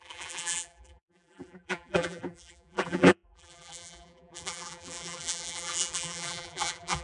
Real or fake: fake